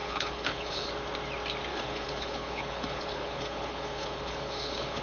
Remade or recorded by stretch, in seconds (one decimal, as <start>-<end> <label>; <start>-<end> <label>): 0.0-0.9 remade; 0.9-1.7 recorded; 1.7-5.0 remade